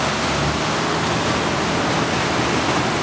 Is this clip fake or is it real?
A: real